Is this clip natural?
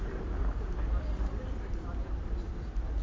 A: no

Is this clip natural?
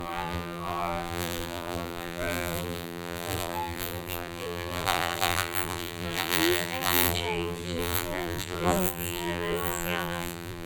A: no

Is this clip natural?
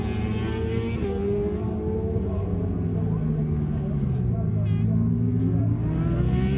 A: yes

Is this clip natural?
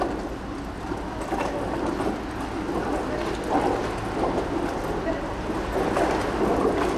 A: yes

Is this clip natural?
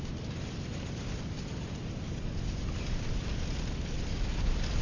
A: yes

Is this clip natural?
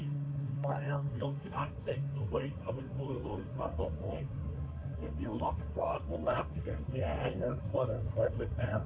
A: no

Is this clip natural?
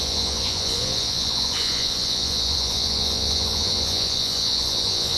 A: no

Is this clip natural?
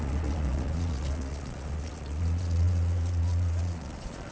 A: no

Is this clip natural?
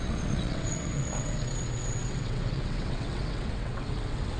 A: no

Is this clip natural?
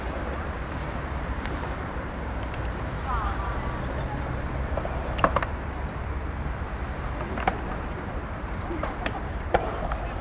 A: no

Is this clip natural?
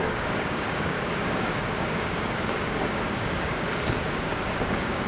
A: no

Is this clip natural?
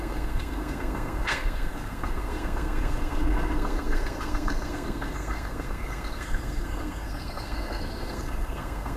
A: no